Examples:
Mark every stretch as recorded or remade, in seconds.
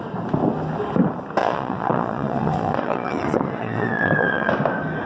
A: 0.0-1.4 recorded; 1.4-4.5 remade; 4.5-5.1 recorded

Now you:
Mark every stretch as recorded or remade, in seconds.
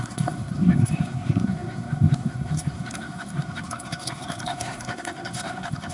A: 0.0-5.9 remade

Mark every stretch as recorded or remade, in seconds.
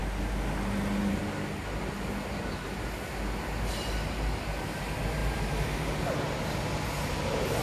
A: 0.0-7.6 recorded